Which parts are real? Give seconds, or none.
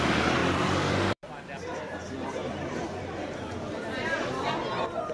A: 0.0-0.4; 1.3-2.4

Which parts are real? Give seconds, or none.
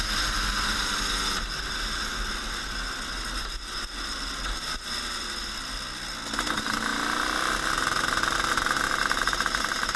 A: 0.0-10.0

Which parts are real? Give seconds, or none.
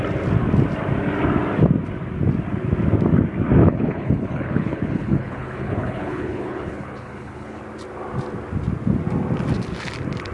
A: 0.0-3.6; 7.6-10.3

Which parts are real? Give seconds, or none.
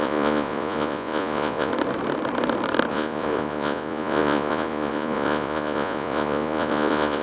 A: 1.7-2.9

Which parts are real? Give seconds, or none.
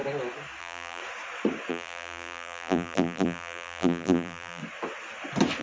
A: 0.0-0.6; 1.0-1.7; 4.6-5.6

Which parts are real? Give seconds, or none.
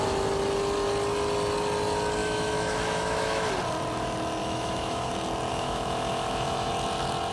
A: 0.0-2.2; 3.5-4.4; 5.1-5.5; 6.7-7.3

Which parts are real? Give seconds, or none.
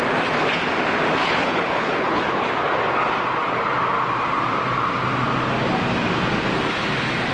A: 0.0-1.2; 2.5-7.3